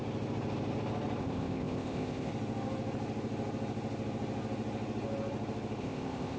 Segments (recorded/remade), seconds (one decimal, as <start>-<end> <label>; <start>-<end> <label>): 0.0-1.2 recorded; 1.2-2.3 remade; 2.3-5.8 recorded; 5.8-6.4 remade